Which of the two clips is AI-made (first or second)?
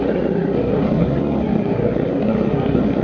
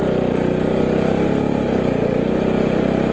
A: first